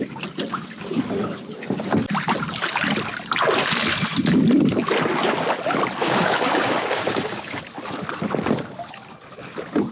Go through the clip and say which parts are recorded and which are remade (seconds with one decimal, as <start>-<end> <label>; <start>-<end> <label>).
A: 0.0-6.0 recorded; 6.0-7.6 remade; 7.6-9.9 recorded